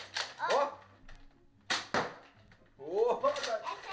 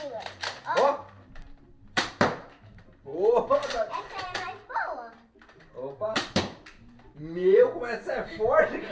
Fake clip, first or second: second